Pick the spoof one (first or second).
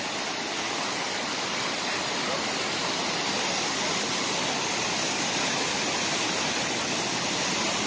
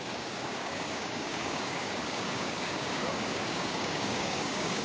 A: second